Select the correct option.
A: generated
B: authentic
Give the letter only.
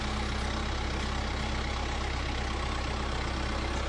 B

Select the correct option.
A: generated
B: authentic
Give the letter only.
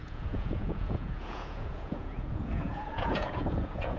A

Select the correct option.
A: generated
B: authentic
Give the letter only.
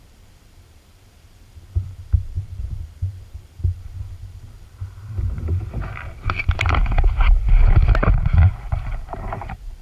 A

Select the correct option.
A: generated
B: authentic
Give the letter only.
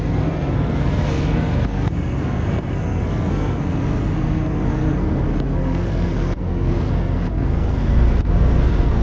A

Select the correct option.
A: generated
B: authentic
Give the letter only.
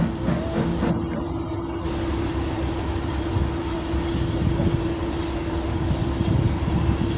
B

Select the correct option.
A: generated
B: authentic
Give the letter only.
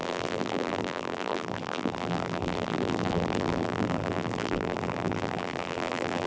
A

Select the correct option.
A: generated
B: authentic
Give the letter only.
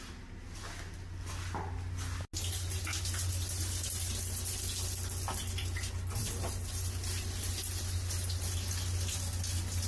B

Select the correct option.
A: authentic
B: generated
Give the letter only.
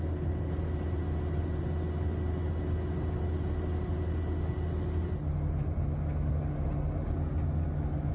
A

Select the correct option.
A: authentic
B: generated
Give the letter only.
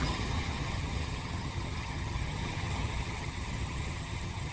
B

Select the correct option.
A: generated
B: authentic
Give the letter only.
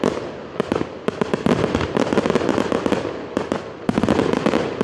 B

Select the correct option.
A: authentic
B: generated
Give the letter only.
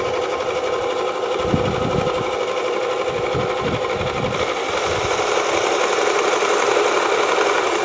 A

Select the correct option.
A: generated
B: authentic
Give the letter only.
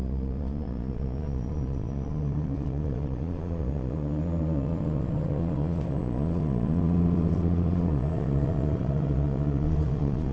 A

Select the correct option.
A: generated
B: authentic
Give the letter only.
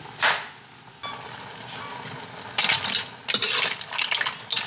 B